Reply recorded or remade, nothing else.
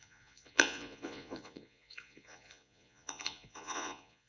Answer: remade